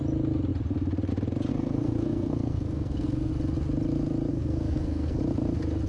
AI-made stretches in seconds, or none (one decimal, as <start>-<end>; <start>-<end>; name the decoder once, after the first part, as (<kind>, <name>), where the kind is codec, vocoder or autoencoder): 1.5-3.3 (codec, SNAC); 4.3-5.2